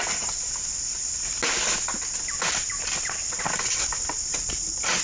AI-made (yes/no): no